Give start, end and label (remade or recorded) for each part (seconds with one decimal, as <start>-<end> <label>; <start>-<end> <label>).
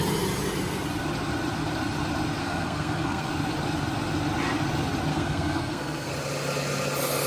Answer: 0.0-2.4 recorded; 2.4-3.3 remade; 3.3-5.1 recorded; 5.1-6.1 remade; 6.1-7.3 recorded